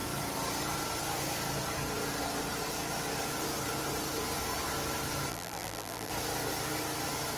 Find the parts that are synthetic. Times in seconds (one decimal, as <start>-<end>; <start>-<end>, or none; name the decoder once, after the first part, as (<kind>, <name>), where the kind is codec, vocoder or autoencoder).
5.3-6.1 (vocoder, BigVGAN v2)